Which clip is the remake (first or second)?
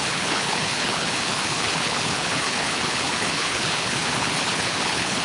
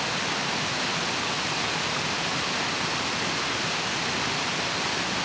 first